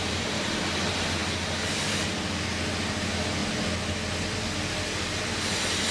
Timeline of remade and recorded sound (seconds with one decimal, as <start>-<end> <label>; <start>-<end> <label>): 0.0-0.6 remade; 0.6-5.9 recorded